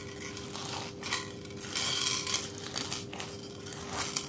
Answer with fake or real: real